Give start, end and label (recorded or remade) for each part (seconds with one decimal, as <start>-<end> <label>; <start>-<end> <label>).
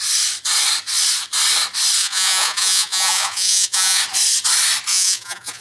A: 0.0-2.0 recorded; 2.0-4.0 remade; 4.0-4.9 recorded; 4.9-5.6 remade